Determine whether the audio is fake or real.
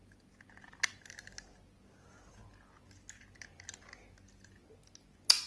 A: real